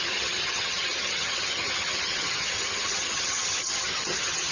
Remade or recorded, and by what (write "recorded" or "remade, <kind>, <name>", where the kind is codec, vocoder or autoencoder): remade, vocoder, HiFi-GAN